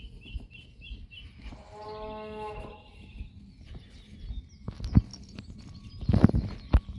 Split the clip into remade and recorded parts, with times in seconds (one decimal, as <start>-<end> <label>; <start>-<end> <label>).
0.0-7.0 recorded